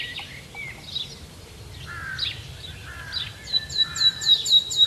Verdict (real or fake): fake